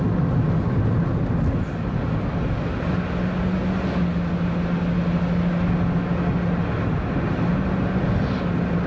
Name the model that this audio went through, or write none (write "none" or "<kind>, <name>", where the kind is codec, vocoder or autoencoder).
none